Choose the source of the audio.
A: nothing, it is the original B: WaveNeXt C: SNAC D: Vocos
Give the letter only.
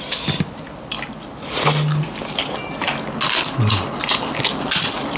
A